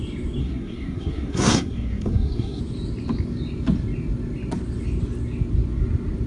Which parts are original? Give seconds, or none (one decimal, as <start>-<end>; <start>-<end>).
0.0-0.4; 2.6-6.3